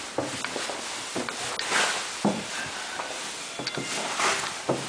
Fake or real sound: real